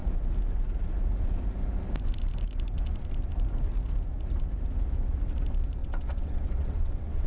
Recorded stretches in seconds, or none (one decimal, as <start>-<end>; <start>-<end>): 0.0-5.8